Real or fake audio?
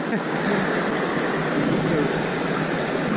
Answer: real